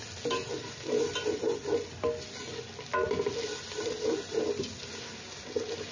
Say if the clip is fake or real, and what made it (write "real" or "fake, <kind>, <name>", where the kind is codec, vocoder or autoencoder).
real